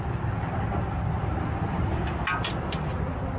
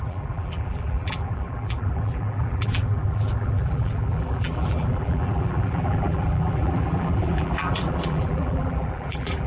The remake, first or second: second